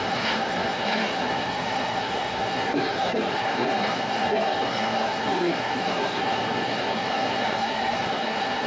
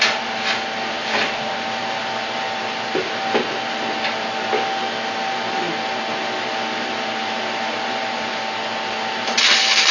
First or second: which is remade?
first